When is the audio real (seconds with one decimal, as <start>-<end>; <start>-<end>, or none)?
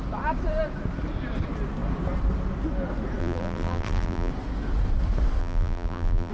0.0-3.2; 4.3-5.4